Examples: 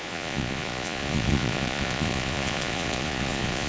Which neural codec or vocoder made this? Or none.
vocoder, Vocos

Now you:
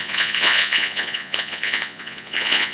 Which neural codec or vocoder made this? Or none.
vocoder, Vocos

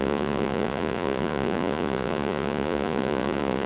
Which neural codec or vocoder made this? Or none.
vocoder, Vocos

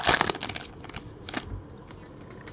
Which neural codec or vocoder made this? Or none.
none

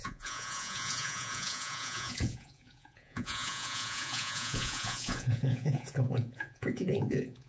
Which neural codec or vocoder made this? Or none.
vocoder, Vocos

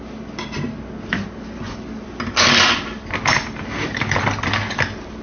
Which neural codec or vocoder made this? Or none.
none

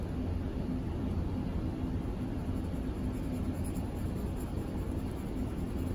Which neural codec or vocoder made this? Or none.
none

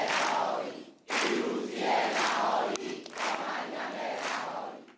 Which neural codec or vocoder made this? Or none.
none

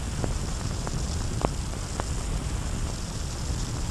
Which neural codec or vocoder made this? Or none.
none